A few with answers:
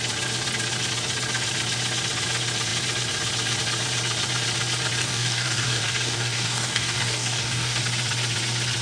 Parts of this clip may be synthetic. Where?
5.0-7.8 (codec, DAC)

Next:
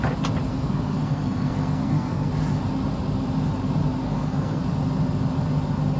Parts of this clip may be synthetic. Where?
0.5-2.3 (codec, SNAC); 4.0-4.6